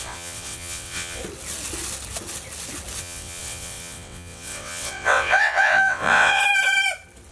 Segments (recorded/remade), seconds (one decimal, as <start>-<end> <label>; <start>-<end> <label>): 0.0-1.2 remade; 1.2-3.0 recorded; 3.0-6.4 remade; 6.4-7.3 recorded